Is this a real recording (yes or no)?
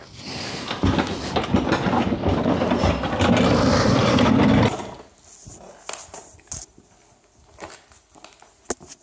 yes